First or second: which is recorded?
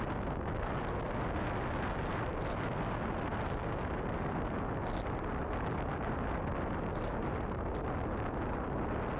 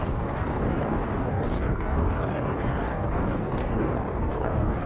first